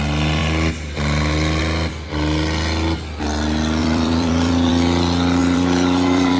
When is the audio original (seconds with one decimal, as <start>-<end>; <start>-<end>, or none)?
0.0-3.8; 4.7-5.4